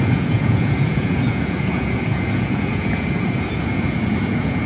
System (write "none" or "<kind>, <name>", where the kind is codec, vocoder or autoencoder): vocoder, Vocos